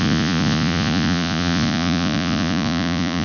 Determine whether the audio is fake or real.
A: fake